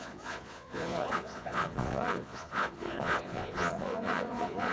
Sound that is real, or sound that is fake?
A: fake